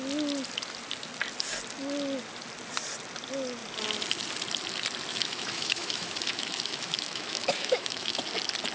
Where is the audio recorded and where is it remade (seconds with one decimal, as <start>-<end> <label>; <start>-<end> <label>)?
0.0-5.1 recorded; 5.1-8.2 remade; 8.2-8.7 recorded